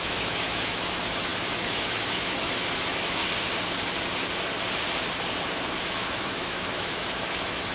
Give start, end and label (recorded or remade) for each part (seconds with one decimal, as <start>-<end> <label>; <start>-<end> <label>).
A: 0.0-3.2 remade; 3.2-5.9 recorded; 5.9-7.7 remade